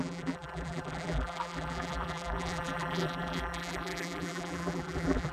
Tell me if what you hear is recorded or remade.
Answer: remade